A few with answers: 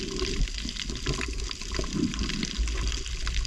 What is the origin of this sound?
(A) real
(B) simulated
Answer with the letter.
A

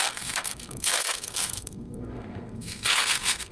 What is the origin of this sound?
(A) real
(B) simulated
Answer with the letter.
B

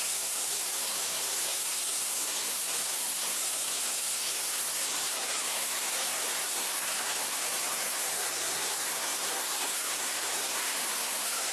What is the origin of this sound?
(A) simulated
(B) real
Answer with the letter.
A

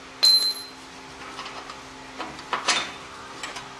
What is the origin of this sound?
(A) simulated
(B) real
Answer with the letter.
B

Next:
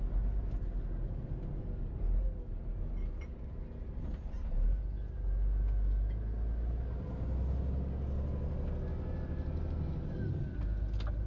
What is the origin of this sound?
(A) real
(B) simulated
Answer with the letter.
A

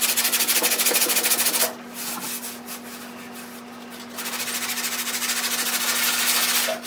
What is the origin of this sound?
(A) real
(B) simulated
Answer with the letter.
A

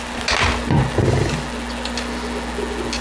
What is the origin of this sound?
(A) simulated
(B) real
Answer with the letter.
B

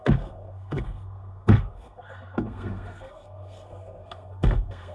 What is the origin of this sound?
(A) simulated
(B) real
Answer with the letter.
A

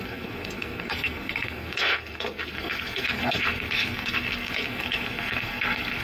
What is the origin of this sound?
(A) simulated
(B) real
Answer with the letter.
A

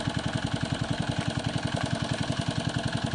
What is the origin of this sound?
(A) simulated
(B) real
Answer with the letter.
B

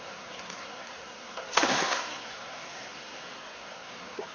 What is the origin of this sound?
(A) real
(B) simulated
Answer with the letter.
B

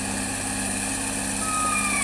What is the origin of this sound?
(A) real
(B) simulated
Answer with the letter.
A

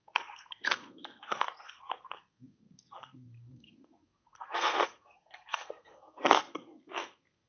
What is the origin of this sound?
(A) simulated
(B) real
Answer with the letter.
A